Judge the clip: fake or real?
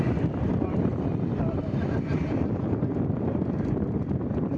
fake